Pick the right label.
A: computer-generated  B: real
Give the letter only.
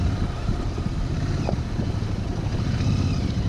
A